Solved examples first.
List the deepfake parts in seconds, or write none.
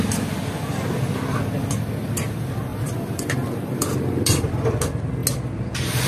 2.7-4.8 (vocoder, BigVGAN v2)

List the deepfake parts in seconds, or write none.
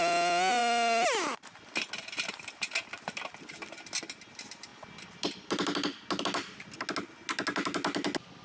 none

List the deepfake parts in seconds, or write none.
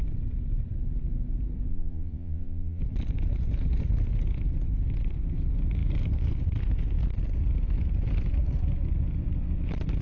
1.7-2.8 (vocoder, Vocos)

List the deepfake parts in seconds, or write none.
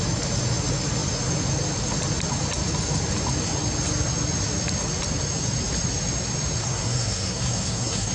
6.6-8.1 (codec, SNAC)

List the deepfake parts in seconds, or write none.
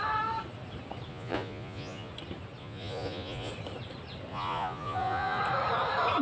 1.1-2.1 (vocoder, Vocos); 2.6-3.5; 4.3-5.4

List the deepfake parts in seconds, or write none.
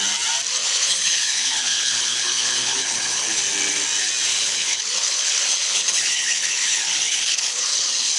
0.6-3.4 (codec, HILCodec); 4.3-8.2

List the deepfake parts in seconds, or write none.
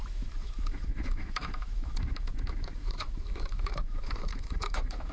0.0-5.1 (autoencoder, DAC-VAE)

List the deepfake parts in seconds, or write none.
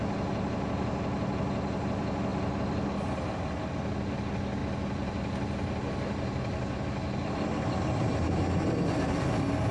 none